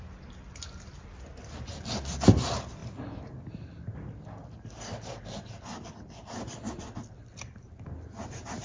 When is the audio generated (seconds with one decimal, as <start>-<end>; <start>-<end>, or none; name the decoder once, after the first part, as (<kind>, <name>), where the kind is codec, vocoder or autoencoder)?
none

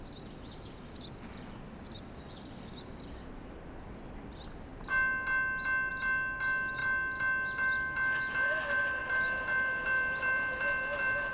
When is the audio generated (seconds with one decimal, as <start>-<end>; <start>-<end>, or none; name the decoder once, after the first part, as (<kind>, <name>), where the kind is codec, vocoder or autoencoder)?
none

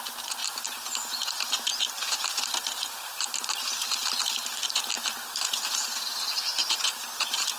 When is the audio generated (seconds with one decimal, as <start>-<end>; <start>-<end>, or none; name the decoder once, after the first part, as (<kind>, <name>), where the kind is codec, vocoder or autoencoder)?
0.0-7.6 (vocoder, BigVGAN v2)

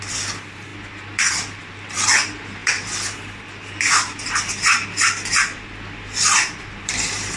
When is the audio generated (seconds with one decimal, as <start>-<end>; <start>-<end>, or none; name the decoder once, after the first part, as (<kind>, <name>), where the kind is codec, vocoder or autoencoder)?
0.0-0.7 (vocoder, BigVGAN v2); 1.3-7.4

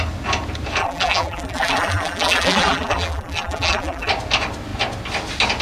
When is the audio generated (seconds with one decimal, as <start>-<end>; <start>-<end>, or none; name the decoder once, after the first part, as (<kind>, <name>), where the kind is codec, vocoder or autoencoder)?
0.8-4.1 (vocoder, BigVGAN v2)

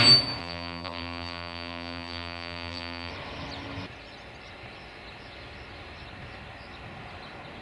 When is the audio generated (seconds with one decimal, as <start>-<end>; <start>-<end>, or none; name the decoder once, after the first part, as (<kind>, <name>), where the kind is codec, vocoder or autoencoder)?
0.4-3.1 (vocoder, BigVGAN v2)